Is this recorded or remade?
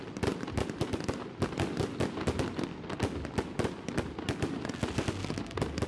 recorded